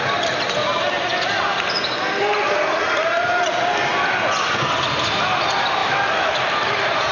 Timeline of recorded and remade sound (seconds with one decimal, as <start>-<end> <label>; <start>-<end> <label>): 0.0-5.8 recorded; 5.8-6.4 remade; 6.4-7.1 recorded